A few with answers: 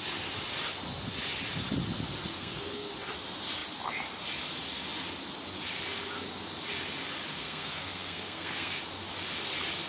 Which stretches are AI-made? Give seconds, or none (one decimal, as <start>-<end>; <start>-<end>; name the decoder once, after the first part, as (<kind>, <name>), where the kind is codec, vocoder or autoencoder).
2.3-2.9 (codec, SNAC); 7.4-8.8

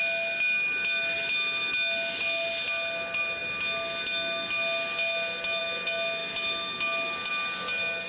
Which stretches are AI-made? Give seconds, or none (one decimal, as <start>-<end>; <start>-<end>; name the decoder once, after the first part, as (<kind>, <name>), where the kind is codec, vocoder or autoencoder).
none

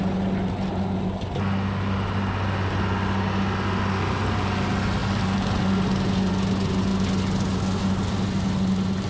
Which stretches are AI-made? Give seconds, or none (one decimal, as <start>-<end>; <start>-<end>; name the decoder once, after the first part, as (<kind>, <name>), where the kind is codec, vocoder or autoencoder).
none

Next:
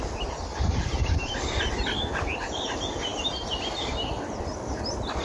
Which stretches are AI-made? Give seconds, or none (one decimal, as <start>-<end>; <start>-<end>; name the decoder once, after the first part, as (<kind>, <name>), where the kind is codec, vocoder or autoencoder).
1.0-1.7 (vocoder, BigVGAN v2); 3.1-4.4